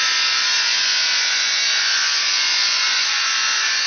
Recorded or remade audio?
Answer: remade